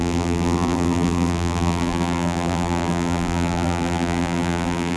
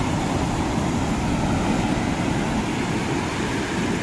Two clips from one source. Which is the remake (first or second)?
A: first